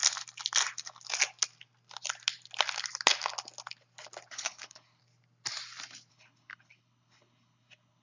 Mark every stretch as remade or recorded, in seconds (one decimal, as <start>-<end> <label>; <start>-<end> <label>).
0.0-4.3 recorded; 4.3-5.0 remade; 5.0-6.1 recorded; 6.1-8.0 remade